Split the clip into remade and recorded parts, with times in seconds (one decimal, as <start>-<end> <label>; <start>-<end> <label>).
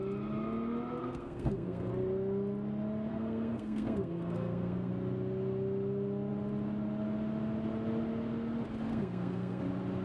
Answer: 0.0-1.0 recorded; 1.0-1.9 remade; 1.9-3.1 recorded; 3.1-4.9 remade; 4.9-8.9 recorded; 8.9-9.6 remade; 9.6-10.0 recorded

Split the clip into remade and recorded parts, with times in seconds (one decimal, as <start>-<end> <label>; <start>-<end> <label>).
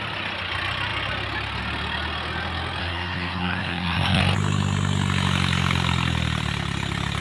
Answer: 0.0-2.8 recorded; 2.8-4.2 remade; 4.2-7.2 recorded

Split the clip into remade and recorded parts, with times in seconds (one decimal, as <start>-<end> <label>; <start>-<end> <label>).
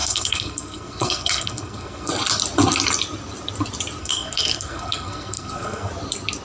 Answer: 0.0-2.1 remade; 2.1-4.0 recorded; 4.0-5.9 remade; 5.9-6.4 recorded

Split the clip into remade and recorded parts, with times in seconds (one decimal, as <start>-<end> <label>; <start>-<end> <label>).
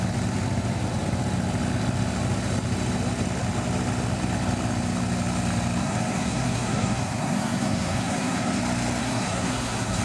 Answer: 0.0-5.8 recorded; 5.8-8.6 remade; 8.6-9.0 recorded; 9.0-10.0 remade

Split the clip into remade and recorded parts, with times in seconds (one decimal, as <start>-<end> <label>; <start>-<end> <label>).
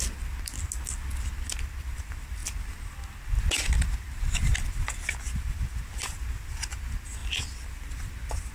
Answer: 0.0-8.5 recorded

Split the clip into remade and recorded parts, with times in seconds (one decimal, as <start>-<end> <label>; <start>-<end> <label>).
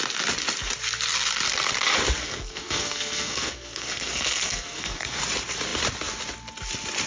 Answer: 0.0-2.2 recorded; 2.2-5.2 remade; 5.2-7.1 recorded